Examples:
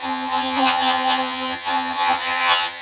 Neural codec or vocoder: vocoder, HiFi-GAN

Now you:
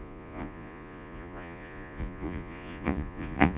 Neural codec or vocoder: vocoder, Vocos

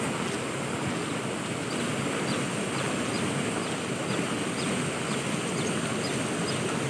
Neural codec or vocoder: none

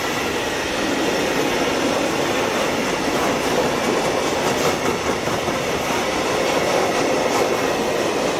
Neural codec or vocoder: none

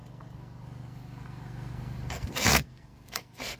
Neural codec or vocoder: codec, SNAC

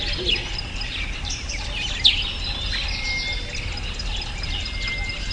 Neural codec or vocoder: none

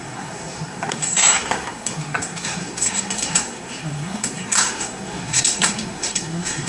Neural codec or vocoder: codec, SNAC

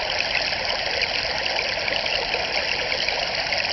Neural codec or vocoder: none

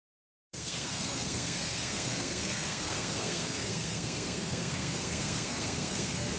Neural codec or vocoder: codec, SNAC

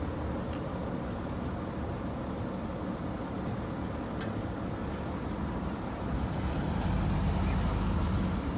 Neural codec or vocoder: none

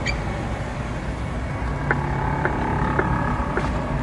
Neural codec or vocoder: none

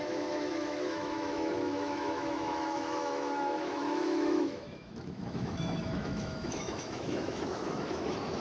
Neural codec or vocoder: autoencoder, DAC-VAE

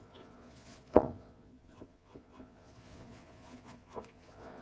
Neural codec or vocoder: vocoder, Vocos